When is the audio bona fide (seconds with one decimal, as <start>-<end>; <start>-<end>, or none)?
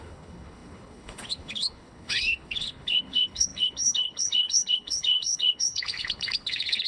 none